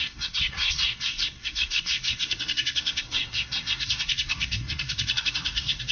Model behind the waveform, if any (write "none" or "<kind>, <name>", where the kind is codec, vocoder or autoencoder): codec, SNAC